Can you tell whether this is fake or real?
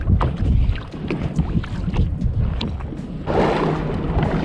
real